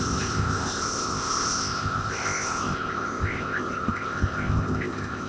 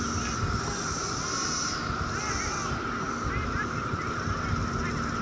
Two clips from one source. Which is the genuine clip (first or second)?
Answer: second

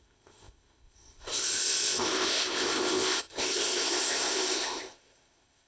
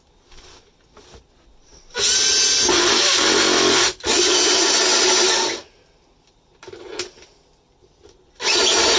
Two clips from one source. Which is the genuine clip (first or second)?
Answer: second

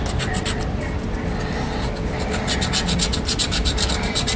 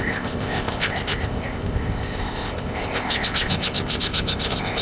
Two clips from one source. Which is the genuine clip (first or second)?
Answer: first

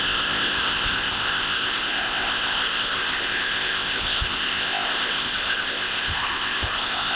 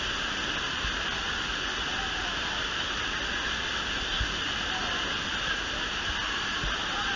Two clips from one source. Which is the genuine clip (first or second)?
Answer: second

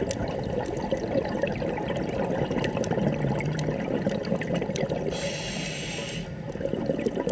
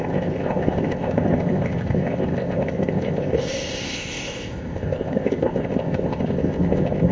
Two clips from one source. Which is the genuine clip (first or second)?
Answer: first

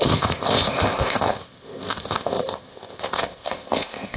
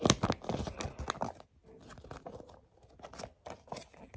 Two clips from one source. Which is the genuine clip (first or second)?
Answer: second